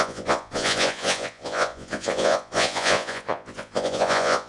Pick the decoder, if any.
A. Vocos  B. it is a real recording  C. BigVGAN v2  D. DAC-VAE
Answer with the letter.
A